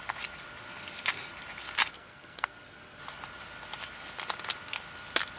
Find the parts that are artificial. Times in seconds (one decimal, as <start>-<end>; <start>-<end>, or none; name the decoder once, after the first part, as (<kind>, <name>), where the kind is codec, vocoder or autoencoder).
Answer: 1.9-3.0 (codec, SNAC)